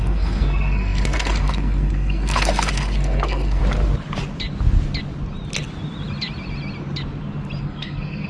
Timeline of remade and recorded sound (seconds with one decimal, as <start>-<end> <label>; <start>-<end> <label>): 0.0-3.6 remade; 3.6-7.6 recorded; 7.6-8.3 remade